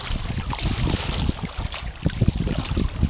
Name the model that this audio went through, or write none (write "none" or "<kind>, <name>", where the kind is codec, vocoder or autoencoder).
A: none